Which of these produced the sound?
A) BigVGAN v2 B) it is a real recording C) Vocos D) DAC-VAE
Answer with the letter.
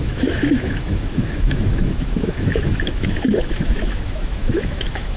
D